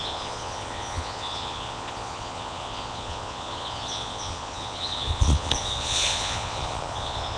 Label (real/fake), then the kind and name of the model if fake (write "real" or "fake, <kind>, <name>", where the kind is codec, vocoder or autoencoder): fake, vocoder, Vocos